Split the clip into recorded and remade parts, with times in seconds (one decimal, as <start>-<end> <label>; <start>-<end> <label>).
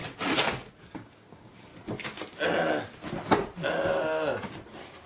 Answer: 0.0-0.8 recorded; 0.8-1.7 remade; 1.7-5.1 recorded